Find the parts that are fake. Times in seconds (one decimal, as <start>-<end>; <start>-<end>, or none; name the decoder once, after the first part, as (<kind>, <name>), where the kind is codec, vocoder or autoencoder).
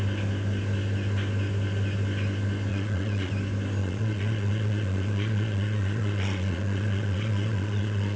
2.7-3.3 (vocoder, Vocos); 3.8-8.2